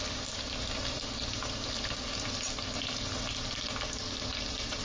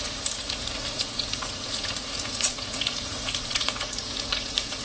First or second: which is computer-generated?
second